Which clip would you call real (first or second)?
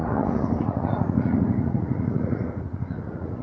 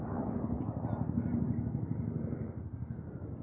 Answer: second